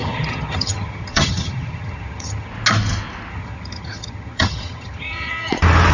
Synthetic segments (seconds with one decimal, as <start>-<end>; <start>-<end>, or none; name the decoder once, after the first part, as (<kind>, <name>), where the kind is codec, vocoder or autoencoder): 0.0-2.5 (vocoder, HiFi-GAN); 3.3-5.5